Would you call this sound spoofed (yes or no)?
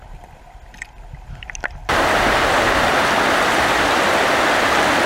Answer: no